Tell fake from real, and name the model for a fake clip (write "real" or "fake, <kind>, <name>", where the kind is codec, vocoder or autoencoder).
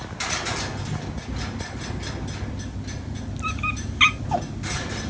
real